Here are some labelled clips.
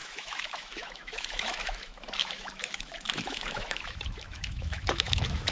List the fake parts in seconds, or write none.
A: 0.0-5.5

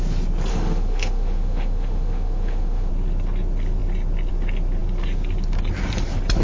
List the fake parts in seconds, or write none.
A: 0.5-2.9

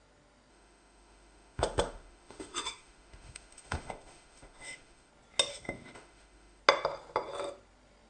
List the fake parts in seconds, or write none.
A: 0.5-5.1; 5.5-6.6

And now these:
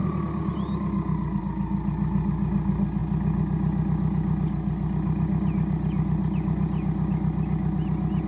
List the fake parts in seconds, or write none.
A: none